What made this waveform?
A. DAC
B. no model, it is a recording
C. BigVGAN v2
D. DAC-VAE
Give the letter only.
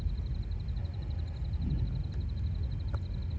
B